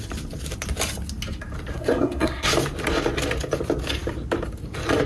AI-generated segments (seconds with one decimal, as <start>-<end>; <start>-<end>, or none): 1.7-2.5